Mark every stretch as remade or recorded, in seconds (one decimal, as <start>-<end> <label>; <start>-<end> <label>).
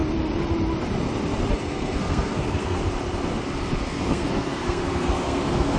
0.0-1.5 recorded; 1.5-2.8 remade; 2.8-3.8 recorded; 3.8-5.8 remade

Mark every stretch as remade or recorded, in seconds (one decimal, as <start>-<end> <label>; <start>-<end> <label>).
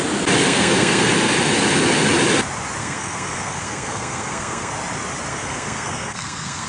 0.0-0.4 recorded; 0.4-1.1 remade; 1.1-2.8 recorded; 2.8-4.7 remade; 4.7-5.3 recorded; 5.3-6.7 remade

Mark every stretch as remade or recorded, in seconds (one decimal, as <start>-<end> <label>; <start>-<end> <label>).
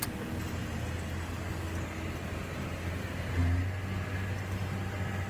0.0-5.3 recorded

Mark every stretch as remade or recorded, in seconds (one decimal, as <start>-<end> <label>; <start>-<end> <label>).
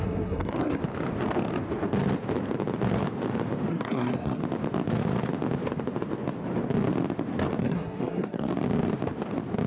0.0-0.8 remade; 0.8-3.7 recorded; 3.7-4.4 remade; 4.4-7.6 recorded; 7.6-8.5 remade; 8.5-9.7 recorded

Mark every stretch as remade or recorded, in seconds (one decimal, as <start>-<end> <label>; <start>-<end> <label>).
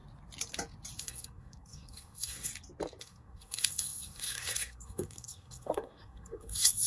0.0-1.0 recorded; 1.0-2.5 remade; 2.5-3.0 recorded; 3.0-6.9 remade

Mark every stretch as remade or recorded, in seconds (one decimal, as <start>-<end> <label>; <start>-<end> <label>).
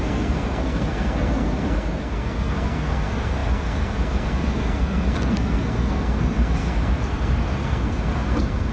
0.0-8.7 remade